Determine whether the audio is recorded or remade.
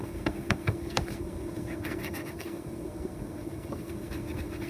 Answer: remade